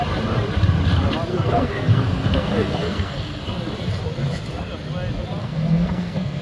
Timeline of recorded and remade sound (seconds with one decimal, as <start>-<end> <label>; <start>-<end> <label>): 0.0-1.3 recorded; 1.3-3.6 remade; 3.6-5.4 recorded; 5.4-6.4 remade